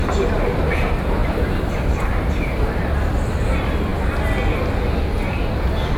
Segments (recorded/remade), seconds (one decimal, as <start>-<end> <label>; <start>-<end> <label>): 0.0-1.2 recorded; 1.2-2.8 remade; 2.8-6.0 recorded